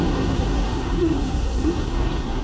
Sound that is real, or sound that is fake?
fake